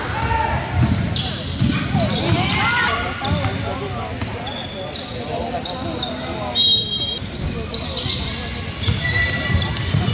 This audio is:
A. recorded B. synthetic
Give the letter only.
A